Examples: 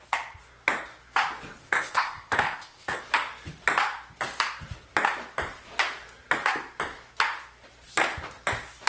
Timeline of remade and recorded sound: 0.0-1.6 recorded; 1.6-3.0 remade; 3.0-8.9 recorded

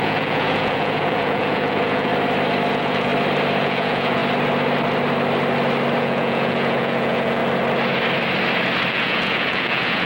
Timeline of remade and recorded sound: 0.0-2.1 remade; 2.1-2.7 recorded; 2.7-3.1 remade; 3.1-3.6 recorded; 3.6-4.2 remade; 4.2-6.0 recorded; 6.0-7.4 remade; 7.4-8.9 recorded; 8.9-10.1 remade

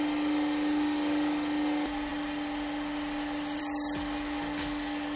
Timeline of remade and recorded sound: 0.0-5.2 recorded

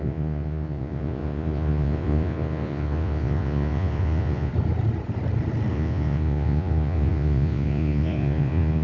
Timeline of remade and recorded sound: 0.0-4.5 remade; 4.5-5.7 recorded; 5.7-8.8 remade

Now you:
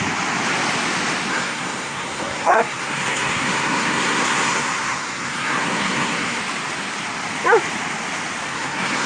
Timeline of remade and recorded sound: 0.0-1.3 recorded; 1.3-6.4 remade; 6.4-8.5 recorded; 8.5-9.1 remade